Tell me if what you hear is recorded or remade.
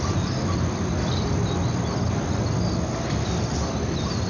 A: recorded